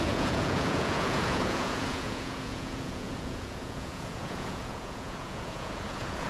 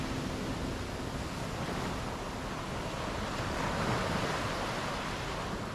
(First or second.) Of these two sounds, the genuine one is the second